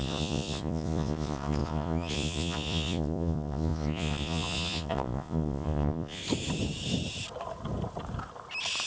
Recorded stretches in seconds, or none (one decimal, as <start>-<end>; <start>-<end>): 6.2-8.9